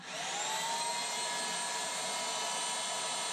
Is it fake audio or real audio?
real